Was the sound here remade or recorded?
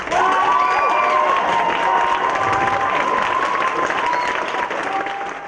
recorded